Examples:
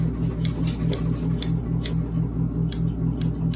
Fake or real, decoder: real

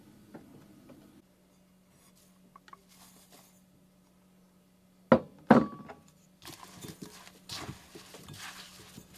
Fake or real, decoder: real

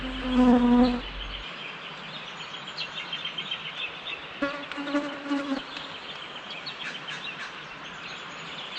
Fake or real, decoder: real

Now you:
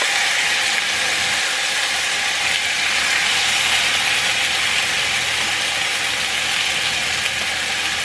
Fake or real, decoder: real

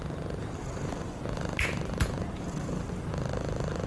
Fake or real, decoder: real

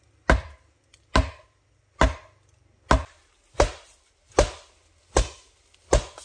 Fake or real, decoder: real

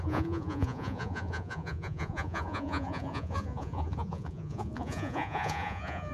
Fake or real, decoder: fake, vocoder, Vocos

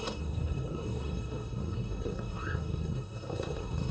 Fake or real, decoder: fake, codec, SNAC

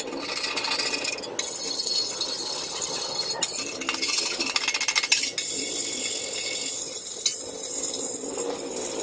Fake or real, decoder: real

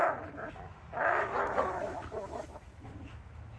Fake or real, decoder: fake, autoencoder, DAC-VAE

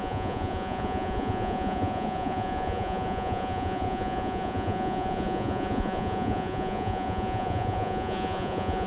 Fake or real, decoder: fake, vocoder, Vocos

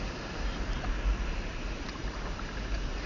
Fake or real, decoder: fake, vocoder, BigVGAN v2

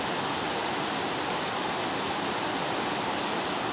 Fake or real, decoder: real